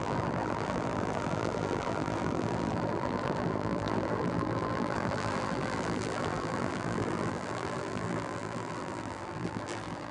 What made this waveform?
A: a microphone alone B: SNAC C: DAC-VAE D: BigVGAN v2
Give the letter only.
D